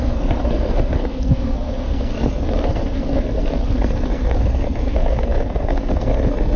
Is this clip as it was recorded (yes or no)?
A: no